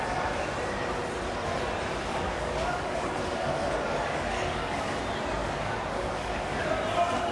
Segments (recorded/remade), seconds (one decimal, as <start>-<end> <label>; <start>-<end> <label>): 0.0-2.1 recorded; 2.1-5.0 remade; 5.0-5.4 recorded; 5.4-6.7 remade; 6.7-7.3 recorded